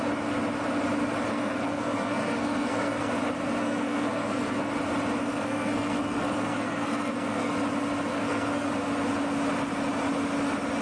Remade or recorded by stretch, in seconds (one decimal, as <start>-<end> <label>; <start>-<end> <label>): 0.0-1.3 recorded; 1.3-3.1 remade; 3.1-3.6 recorded; 3.6-4.7 remade; 4.7-5.2 recorded; 5.2-7.5 remade; 7.5-8.1 recorded; 8.1-8.7 remade; 8.7-10.8 recorded